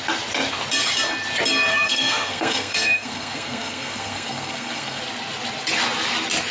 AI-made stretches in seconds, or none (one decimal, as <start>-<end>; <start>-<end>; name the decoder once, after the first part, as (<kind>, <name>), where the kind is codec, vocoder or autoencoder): 1.7-5.0 (codec, SNAC)

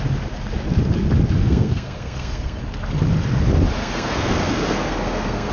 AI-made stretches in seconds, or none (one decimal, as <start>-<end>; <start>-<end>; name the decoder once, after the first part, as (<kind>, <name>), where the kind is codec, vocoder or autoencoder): 1.4-2.6 (codec, SNAC); 3.8-5.5